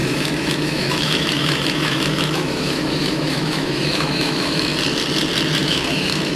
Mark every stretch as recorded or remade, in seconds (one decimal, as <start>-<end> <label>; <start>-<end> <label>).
0.0-4.7 remade; 4.7-5.6 recorded; 5.6-6.4 remade